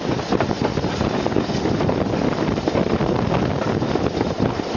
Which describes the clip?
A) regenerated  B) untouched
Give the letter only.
B